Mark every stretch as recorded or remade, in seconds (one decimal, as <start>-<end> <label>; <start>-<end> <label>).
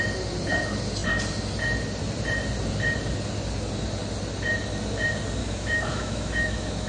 0.0-5.4 recorded; 5.4-6.9 remade